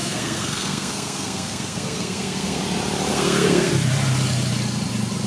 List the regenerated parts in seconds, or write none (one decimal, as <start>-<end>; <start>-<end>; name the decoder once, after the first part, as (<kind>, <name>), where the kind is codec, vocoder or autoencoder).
0.0-2.6 (codec, SNAC); 3.1-3.7